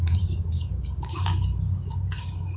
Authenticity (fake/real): fake